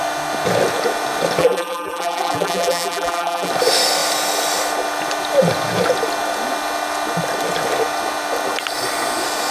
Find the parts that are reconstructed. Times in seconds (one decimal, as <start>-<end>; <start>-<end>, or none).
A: 1.4-3.5